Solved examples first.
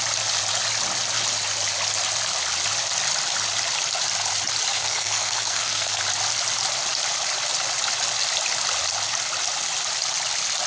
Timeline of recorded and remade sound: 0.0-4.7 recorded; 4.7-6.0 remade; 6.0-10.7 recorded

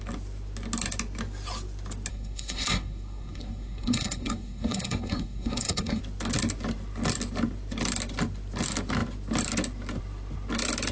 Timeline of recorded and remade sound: 0.0-2.1 recorded; 2.1-6.0 remade; 6.0-10.9 recorded

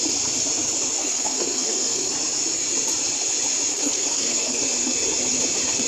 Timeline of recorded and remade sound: 0.0-1.0 recorded; 1.0-2.1 remade; 2.1-3.7 recorded; 3.7-4.6 remade; 4.6-5.9 recorded